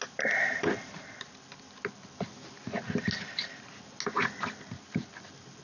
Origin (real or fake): real